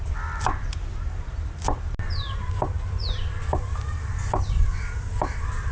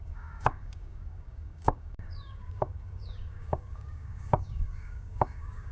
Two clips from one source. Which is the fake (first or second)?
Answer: second